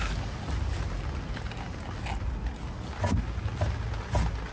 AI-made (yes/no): no